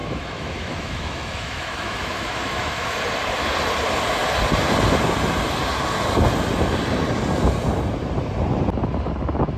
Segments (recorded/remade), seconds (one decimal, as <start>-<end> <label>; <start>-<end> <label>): 0.0-3.0 remade; 3.0-9.6 recorded